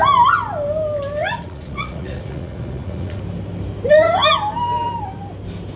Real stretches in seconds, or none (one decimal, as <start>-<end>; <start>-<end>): 0.0-1.2; 3.2-5.8